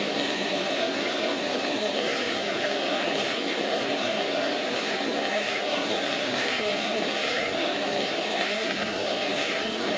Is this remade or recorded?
remade